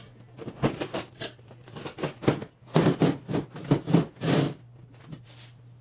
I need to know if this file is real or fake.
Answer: real